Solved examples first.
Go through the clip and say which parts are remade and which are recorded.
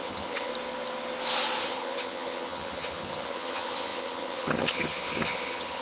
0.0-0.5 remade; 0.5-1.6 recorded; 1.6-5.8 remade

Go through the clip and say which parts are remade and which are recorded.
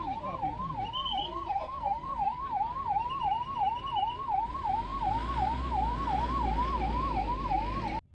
0.0-1.2 recorded; 1.2-2.4 remade; 2.4-8.1 recorded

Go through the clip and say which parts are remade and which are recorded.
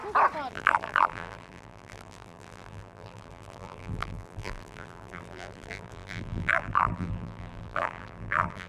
0.0-0.5 recorded; 0.5-8.7 remade